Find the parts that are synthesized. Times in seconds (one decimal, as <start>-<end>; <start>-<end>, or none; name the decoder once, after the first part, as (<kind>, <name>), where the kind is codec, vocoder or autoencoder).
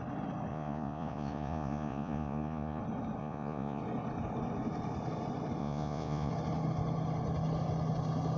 0.5-2.8 (vocoder, Vocos); 3.2-3.8; 5.6-6.3